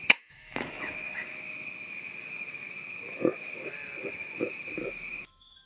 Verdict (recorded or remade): remade